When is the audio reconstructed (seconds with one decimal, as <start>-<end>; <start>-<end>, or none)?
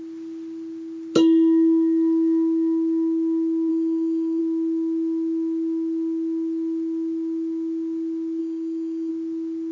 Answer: 3.7-4.4; 8.4-9.1